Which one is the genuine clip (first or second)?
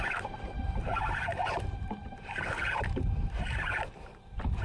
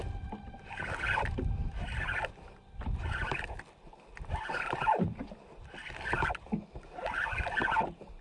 second